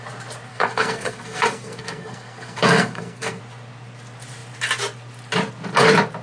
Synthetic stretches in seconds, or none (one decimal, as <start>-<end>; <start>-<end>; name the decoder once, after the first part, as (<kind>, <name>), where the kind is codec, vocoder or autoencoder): 0.5-3.4 (codec, SNAC)